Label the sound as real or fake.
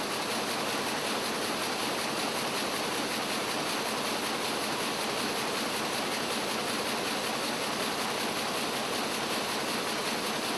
real